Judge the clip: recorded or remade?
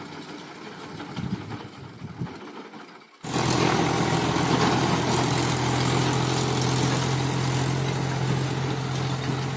recorded